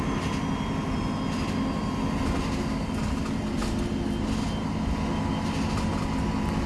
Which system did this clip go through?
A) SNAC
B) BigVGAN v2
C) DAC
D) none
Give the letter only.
D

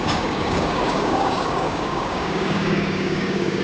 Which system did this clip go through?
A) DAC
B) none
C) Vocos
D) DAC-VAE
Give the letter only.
A